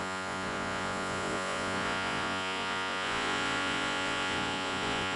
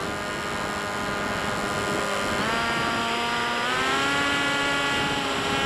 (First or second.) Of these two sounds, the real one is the second